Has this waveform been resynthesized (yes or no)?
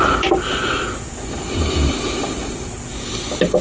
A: no